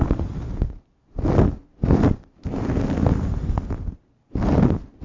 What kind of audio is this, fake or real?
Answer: real